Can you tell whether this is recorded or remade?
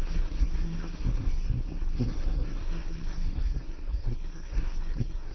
remade